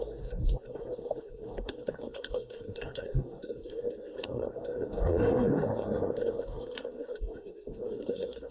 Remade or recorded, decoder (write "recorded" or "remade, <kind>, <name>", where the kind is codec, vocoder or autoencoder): remade, codec, SNAC